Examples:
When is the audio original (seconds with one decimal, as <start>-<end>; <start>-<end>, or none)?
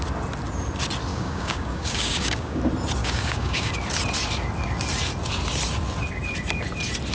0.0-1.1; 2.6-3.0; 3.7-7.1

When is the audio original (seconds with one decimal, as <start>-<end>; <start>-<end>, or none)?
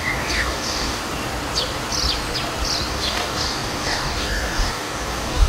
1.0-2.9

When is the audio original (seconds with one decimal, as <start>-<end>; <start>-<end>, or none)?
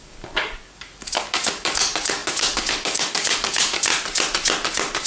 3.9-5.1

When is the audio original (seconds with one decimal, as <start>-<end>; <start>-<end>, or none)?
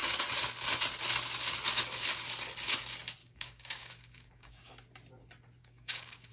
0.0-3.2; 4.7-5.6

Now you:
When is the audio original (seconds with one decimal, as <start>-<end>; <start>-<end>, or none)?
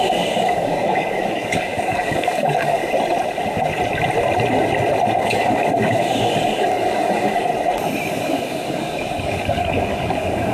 2.8-5.2; 7.5-8.1